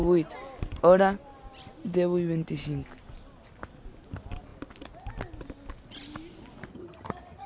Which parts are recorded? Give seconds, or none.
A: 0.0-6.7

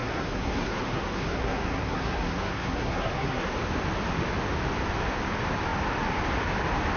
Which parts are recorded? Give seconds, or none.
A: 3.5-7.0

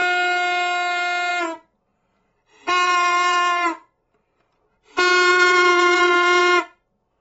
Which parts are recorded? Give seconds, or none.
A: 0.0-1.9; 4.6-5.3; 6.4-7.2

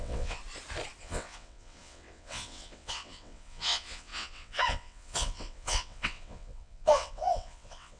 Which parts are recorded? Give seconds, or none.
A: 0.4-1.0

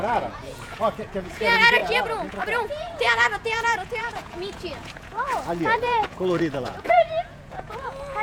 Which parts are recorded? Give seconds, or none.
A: none

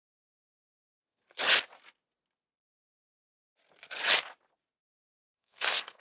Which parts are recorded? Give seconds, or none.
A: 1.2-4.8